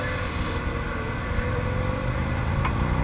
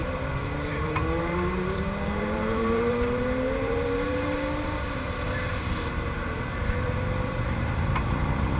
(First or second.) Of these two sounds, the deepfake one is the second